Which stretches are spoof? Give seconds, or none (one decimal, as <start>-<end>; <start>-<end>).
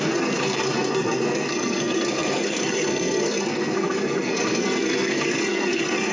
0.0-6.1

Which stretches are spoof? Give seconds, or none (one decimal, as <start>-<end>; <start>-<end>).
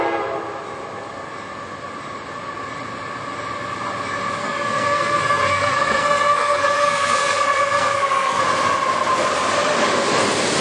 4.4-8.4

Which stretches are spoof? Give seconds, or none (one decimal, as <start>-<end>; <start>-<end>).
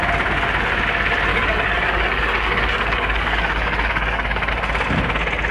1.3-4.5